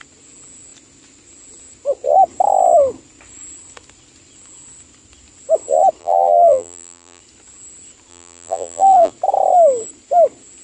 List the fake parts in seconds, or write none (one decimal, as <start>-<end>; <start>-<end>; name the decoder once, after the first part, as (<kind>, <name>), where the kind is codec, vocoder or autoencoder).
6.0-7.2 (vocoder, BigVGAN v2); 8.1-9.1